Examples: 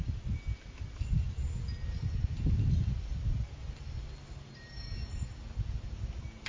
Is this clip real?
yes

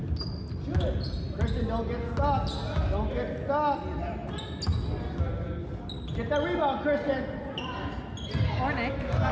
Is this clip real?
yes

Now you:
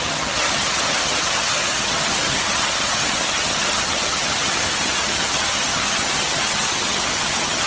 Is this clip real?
no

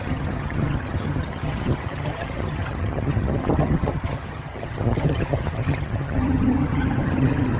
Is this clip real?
no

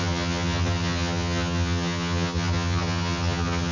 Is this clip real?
no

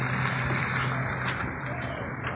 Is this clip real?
yes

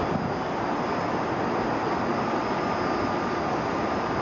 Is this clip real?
yes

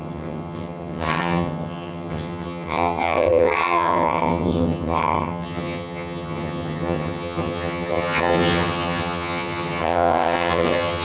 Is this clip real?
no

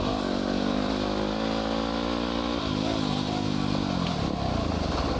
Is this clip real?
yes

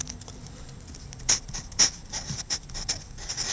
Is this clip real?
yes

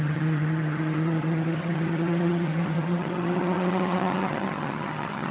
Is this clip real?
no